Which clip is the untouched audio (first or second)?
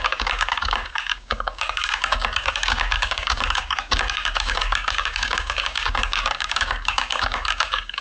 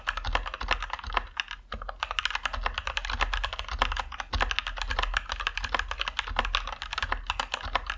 second